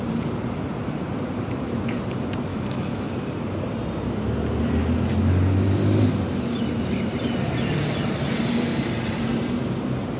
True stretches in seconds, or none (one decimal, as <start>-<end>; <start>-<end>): 0.0-2.5; 3.1-10.2